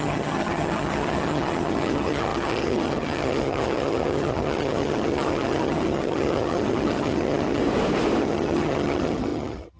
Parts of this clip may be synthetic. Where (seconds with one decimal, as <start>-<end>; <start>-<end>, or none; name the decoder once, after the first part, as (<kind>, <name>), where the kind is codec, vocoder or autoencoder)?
0.0-7.6 (vocoder, HiFi-GAN); 8.2-9.8